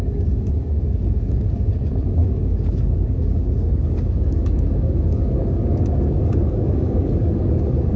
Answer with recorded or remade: remade